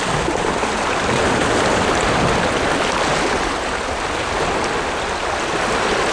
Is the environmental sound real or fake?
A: real